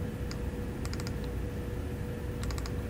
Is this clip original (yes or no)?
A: yes